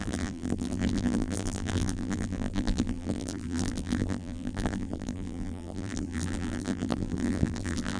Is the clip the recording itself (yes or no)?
no